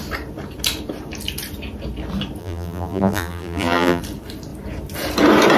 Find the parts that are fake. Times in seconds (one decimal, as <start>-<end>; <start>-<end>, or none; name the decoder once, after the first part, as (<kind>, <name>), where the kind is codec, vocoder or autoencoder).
2.4-4.0 (vocoder, BigVGAN v2)